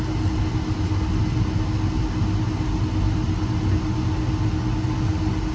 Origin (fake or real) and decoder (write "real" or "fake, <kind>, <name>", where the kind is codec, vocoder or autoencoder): real